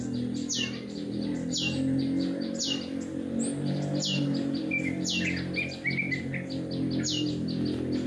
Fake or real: real